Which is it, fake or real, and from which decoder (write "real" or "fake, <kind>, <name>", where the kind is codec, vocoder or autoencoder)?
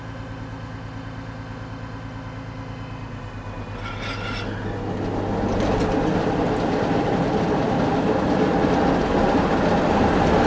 real